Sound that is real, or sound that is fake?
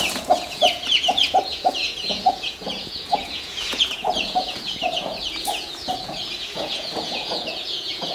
fake